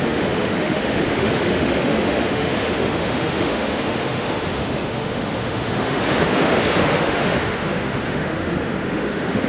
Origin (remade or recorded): remade